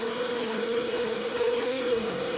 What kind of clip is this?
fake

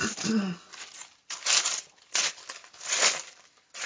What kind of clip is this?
real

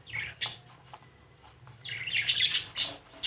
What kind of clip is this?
real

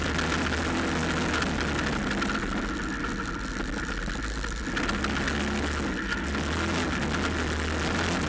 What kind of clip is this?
real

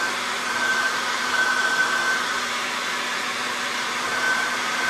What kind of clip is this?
fake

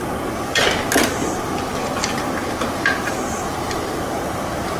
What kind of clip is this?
real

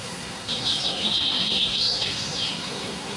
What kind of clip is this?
fake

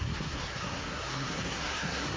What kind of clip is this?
fake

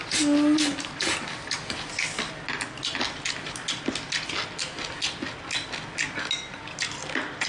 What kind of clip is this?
real